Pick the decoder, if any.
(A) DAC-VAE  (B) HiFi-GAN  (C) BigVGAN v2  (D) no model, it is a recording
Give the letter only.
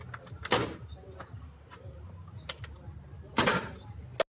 D